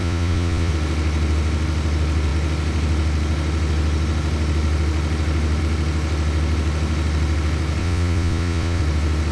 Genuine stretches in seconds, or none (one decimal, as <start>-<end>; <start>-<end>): 0.7-7.8; 8.8-9.3